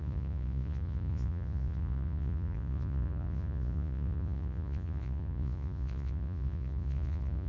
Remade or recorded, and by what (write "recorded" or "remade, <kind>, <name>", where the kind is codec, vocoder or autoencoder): remade, vocoder, Vocos